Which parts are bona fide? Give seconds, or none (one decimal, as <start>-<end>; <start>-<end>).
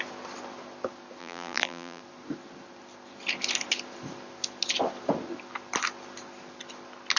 0.0-1.2; 2.0-7.2